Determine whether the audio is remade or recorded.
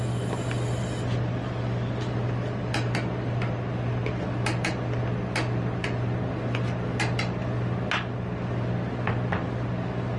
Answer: recorded